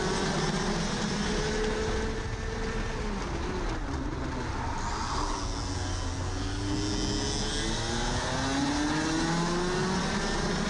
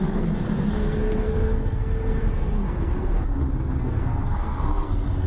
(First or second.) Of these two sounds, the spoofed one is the second